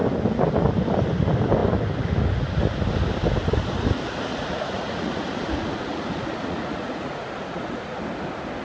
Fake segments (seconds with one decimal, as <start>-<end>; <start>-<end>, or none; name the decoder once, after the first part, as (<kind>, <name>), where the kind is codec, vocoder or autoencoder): 4.3-8.0 (vocoder, Vocos)